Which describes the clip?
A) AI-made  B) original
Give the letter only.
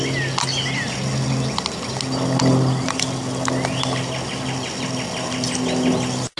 B